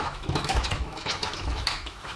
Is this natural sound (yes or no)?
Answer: no